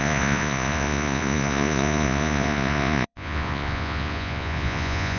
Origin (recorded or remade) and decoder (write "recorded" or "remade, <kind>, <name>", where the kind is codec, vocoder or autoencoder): remade, vocoder, Vocos